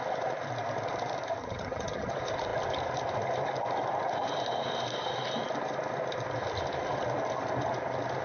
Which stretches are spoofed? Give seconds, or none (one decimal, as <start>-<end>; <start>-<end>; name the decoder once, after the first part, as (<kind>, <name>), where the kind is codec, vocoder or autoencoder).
1.4-2.1 (vocoder, HiFi-GAN)